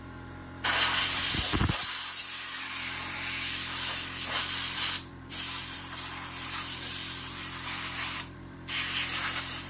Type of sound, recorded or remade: remade